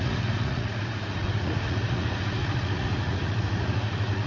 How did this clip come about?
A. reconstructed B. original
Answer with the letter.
A